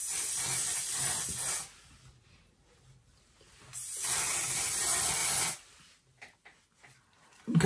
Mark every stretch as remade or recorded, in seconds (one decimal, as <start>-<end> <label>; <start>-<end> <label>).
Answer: 0.0-7.7 recorded